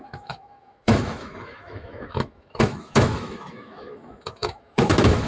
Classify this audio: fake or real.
fake